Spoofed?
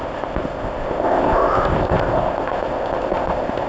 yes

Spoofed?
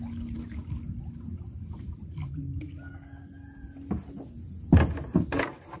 no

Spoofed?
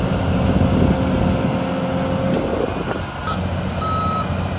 no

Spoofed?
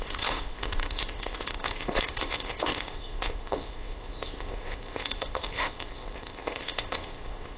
yes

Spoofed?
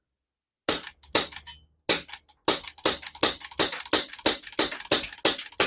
no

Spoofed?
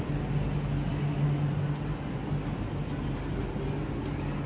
no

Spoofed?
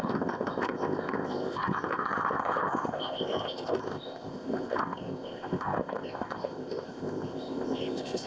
yes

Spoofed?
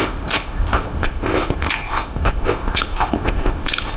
yes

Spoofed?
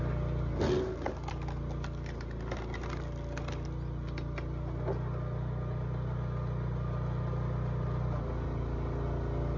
no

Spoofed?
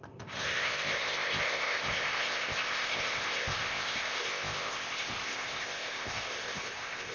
yes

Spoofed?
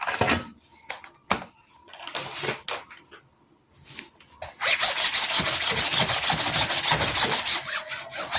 no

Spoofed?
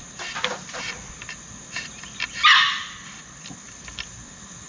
no